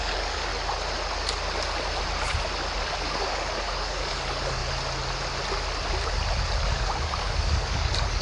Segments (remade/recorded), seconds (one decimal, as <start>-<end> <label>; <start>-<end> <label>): 0.0-0.5 remade; 0.5-3.0 recorded; 3.0-4.6 remade; 4.6-6.6 recorded; 6.6-8.2 remade